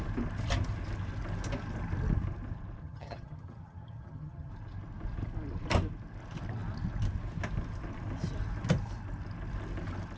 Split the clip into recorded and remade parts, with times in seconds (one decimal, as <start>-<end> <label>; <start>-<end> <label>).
0.0-2.8 recorded; 2.8-4.5 remade; 4.5-10.2 recorded